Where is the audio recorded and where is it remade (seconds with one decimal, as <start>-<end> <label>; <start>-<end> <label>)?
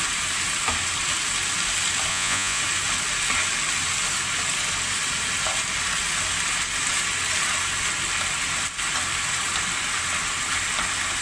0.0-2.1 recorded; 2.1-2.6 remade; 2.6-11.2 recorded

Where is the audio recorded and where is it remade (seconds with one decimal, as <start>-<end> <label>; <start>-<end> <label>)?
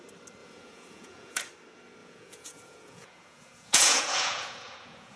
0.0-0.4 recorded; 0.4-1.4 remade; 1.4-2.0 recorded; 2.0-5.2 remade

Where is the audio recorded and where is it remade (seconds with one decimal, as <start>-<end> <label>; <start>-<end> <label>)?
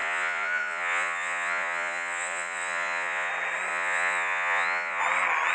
0.0-3.3 remade; 3.3-3.7 recorded; 3.7-5.0 remade; 5.0-5.5 recorded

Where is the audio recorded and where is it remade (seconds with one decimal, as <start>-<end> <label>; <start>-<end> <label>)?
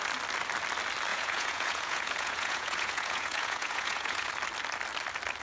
0.0-1.1 recorded; 1.1-4.3 remade; 4.3-5.4 recorded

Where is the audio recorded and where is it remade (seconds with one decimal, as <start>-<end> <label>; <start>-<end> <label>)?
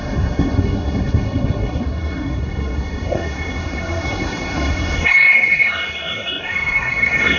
0.0-7.4 remade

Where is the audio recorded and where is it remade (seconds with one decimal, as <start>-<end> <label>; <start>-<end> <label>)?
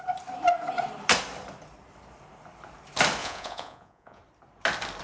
0.0-3.2 recorded; 3.2-4.2 remade; 4.2-5.0 recorded